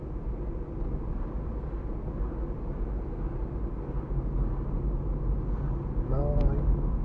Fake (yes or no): no